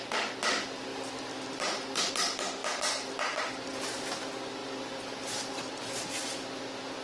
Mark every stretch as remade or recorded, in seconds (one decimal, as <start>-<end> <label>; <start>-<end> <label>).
0.0-0.9 recorded; 0.9-2.1 remade; 2.1-2.6 recorded; 2.6-3.5 remade; 3.5-4.6 recorded; 4.6-5.2 remade; 5.2-7.0 recorded